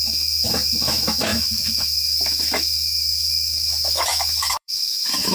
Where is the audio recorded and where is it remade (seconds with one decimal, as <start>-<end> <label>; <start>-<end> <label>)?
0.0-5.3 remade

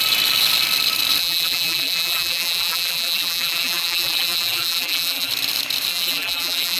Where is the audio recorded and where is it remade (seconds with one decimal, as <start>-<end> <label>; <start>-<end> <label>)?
0.0-1.2 recorded; 1.2-5.3 remade; 5.3-5.9 recorded; 5.9-6.8 remade

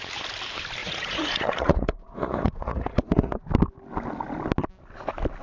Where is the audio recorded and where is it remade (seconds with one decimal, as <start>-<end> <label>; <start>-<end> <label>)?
0.0-0.8 recorded; 0.8-3.4 remade; 3.4-5.4 recorded

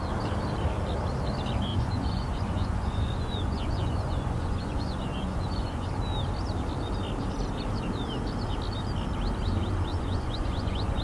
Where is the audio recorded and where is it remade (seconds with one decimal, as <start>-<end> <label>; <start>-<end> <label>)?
0.0-1.7 recorded; 1.7-5.9 remade; 5.9-9.9 recorded; 9.9-11.0 remade

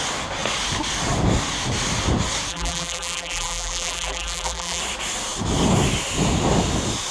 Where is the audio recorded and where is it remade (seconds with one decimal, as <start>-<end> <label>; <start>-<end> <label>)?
0.0-2.5 recorded; 2.5-4.8 remade; 4.8-7.1 recorded

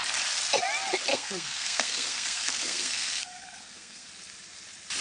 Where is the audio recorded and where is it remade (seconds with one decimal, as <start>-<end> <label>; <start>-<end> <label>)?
0.0-1.1 recorded; 1.1-4.1 remade; 4.1-5.0 recorded

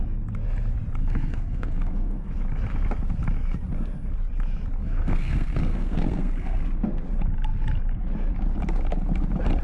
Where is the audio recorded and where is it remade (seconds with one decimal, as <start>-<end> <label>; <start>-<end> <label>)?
0.0-1.0 recorded; 1.0-2.3 remade; 2.3-4.8 recorded; 4.8-6.6 remade; 6.6-9.6 recorded